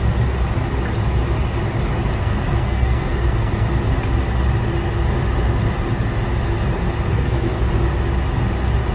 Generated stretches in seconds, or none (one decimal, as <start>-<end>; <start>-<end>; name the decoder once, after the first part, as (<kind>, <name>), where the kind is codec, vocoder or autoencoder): 2.0-3.7 (codec, SNAC); 7.1-7.7